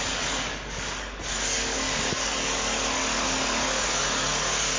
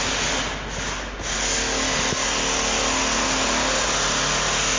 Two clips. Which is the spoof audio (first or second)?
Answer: first